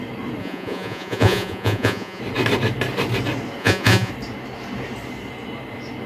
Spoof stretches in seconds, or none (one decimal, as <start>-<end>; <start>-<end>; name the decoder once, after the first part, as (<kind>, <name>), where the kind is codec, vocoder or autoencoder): 0.4-2.2 (vocoder, Vocos); 3.6-4.1

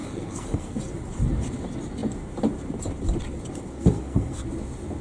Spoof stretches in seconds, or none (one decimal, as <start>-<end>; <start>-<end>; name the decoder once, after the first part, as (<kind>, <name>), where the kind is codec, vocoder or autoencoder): 0.0-0.8 (codec, SNAC); 3.7-4.4

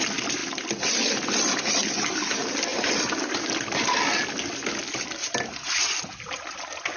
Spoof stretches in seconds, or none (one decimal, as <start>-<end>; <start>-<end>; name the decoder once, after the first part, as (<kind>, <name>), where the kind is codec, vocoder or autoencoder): none